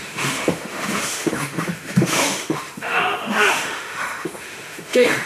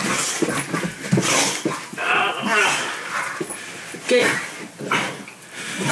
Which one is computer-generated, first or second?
first